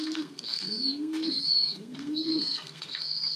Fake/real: fake